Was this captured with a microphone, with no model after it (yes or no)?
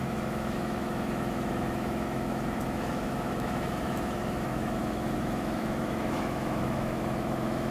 no